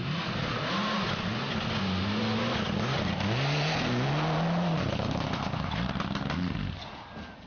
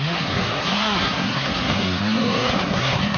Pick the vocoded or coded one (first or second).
second